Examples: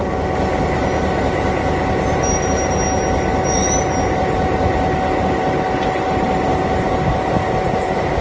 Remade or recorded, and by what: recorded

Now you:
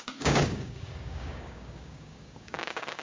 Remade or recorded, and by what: remade, codec, DAC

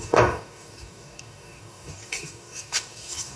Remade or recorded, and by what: remade, codec, DAC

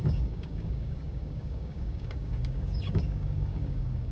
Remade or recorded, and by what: remade, codec, DAC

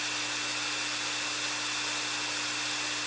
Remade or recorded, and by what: recorded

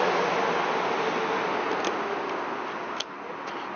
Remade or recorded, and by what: recorded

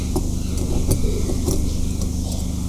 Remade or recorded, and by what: recorded